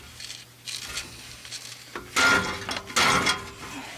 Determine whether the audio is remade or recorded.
recorded